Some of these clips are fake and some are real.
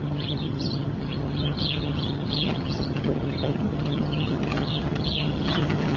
fake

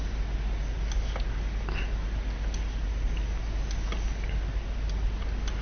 real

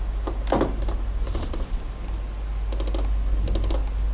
real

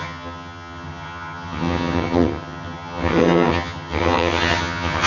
fake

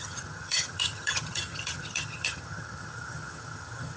fake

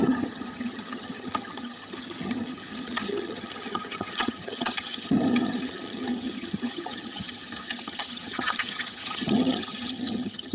fake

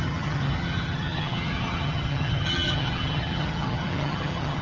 fake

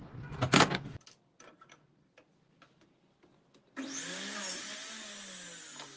real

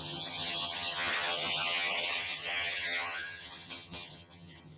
fake